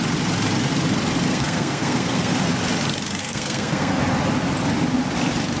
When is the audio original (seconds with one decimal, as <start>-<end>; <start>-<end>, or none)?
0.0-1.3; 2.3-3.2; 3.9-5.6